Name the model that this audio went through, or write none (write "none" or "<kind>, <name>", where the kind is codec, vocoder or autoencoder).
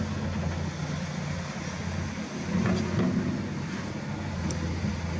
none